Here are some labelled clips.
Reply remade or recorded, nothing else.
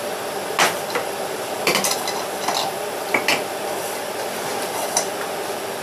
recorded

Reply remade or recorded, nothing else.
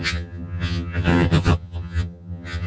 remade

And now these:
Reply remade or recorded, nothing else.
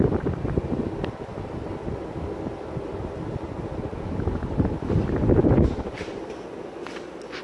recorded